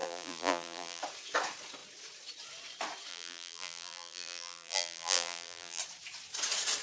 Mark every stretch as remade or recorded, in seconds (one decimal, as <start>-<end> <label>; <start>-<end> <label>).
0.0-1.0 remade; 1.0-3.1 recorded; 3.1-5.8 remade; 5.8-6.8 recorded